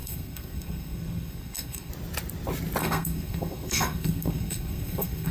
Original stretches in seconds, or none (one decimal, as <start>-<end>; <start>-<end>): 1.9-2.8